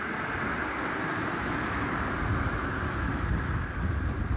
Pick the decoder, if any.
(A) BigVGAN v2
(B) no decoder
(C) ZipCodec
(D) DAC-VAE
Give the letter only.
B